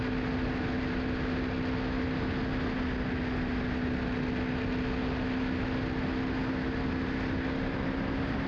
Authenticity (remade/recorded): recorded